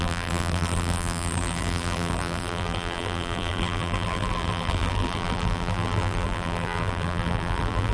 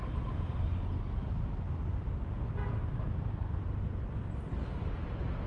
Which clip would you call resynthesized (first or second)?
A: first